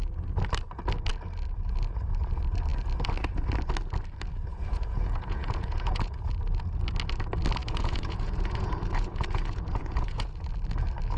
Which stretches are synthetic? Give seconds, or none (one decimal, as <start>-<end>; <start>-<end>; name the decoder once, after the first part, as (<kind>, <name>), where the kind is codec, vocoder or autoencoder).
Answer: 4.5-6.2 (vocoder, Vocos); 7.6-10.5